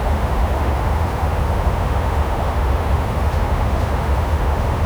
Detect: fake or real fake